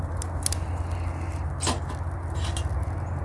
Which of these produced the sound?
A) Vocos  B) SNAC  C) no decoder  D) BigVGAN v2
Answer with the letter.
C